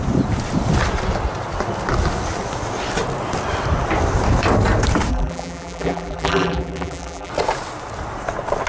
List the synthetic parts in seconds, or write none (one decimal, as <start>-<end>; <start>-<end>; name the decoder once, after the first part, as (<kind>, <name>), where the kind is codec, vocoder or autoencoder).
5.1-7.3 (vocoder, BigVGAN v2)